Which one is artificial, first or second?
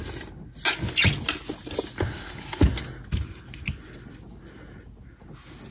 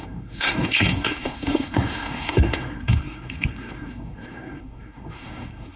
second